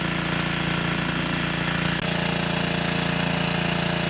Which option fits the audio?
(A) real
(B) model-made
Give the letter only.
A